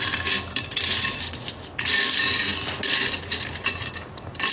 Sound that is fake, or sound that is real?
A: real